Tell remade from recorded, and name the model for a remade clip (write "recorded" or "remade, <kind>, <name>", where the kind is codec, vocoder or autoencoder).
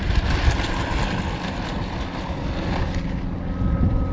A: recorded